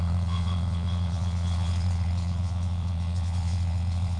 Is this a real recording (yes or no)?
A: no